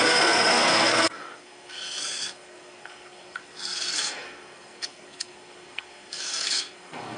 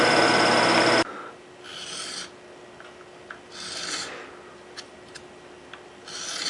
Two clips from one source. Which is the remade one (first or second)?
first